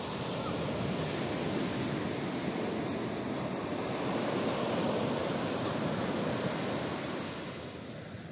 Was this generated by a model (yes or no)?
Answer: no